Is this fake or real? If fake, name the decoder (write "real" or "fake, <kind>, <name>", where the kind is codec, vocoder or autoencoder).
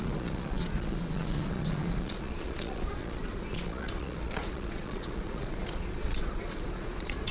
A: fake, vocoder, Vocos